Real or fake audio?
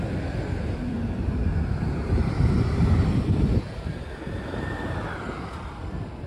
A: fake